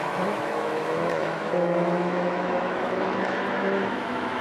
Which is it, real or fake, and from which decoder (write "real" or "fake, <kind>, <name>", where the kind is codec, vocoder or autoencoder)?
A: fake, autoencoder, DAC-VAE